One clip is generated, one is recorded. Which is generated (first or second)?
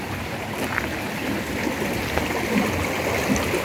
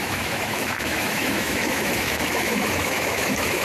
second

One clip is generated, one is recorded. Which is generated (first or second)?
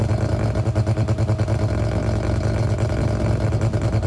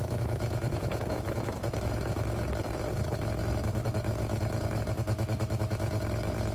second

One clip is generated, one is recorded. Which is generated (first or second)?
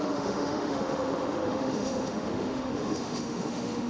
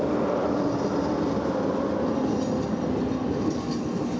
first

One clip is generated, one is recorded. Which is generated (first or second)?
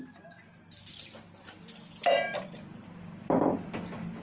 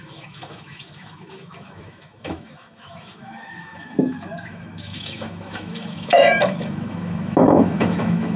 second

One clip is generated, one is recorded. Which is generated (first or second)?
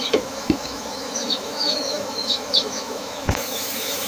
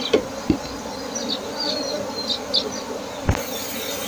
first